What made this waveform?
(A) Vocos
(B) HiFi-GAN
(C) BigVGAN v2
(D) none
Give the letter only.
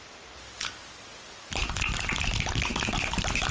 D